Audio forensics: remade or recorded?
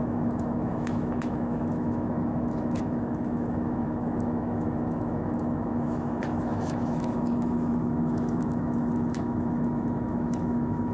remade